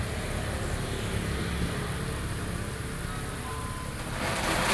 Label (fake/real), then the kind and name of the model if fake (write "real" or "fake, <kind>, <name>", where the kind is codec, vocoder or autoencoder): real